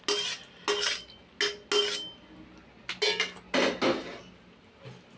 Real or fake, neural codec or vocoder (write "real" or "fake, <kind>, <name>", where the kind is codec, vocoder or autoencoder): real